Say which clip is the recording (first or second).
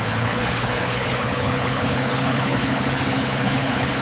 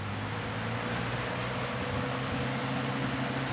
second